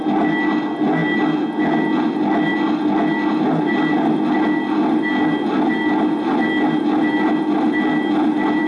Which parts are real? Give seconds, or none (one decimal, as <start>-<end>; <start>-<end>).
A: 0.0-8.7